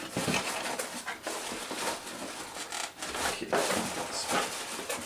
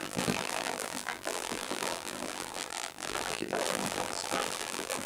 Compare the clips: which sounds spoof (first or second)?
second